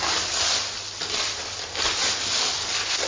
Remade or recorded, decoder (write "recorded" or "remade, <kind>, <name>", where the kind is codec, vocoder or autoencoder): recorded